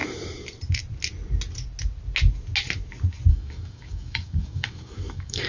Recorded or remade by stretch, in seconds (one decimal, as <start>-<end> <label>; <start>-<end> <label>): 0.0-3.3 recorded; 3.3-5.5 remade